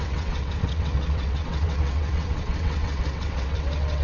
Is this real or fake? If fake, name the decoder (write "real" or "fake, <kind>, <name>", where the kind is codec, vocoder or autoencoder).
fake, vocoder, WaveNeXt